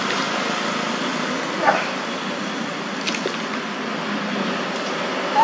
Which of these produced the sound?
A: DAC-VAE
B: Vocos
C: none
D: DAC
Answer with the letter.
C